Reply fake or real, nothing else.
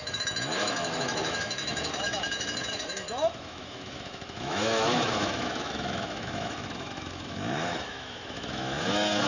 fake